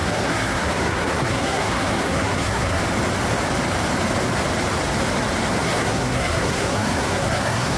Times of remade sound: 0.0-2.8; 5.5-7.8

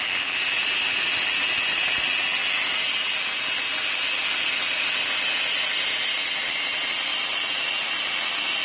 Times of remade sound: none

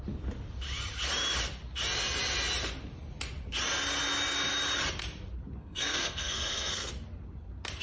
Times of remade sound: 5.6-6.9